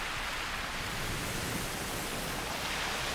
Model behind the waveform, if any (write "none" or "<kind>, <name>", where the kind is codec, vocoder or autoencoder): none